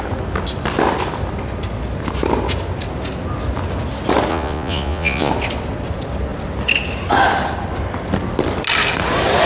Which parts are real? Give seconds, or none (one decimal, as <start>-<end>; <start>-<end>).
0.0-4.3; 5.3-9.5